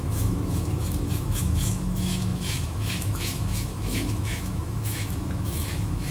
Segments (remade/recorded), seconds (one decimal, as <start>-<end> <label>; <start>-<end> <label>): 0.0-6.1 remade